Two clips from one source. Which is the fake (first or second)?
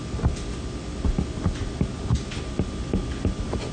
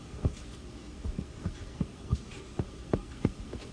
second